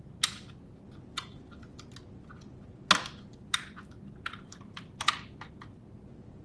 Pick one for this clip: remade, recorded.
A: recorded